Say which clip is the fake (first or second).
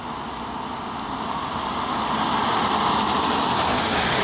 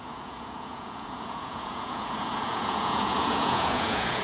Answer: second